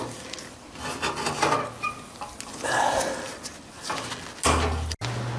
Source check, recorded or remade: recorded